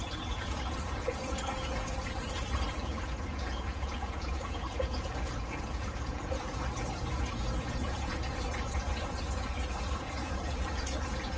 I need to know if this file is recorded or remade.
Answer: remade